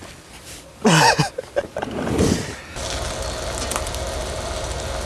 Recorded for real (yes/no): yes